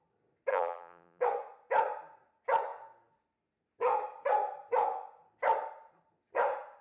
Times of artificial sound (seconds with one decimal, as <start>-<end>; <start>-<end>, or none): 0.5-1.2